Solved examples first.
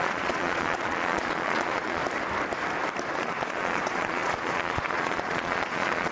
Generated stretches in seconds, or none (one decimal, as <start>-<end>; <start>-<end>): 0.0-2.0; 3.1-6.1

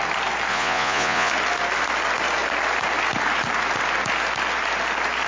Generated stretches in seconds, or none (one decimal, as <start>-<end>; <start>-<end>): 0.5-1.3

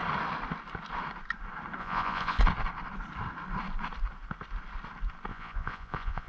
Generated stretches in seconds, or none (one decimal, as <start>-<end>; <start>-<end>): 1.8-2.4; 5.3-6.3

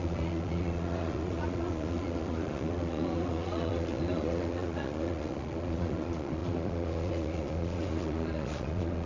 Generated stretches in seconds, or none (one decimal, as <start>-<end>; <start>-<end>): 0.0-9.1

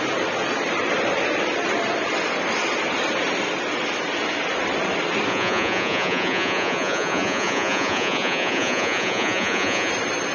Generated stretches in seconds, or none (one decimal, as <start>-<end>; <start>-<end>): 5.3-9.9

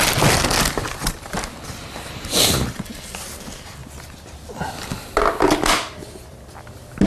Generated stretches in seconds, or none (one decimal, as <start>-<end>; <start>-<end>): none

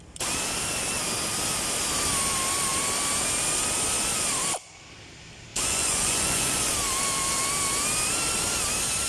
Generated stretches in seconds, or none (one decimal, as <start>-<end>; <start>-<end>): 5.5-6.7

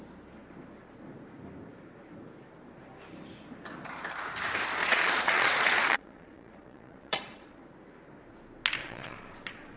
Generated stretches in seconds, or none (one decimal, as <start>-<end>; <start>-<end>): 4.8-7.6; 8.8-9.8